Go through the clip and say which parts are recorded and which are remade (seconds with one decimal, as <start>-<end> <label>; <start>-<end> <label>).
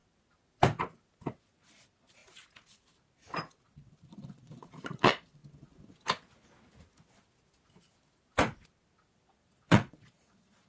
0.0-1.4 recorded; 1.4-2.2 remade; 2.2-4.1 recorded; 4.1-5.4 remade; 5.4-9.3 recorded; 9.3-10.7 remade